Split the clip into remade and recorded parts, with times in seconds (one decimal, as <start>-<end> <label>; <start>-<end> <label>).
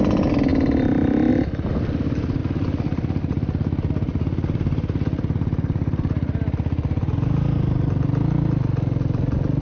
0.0-9.6 recorded